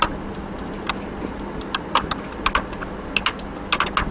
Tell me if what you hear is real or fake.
real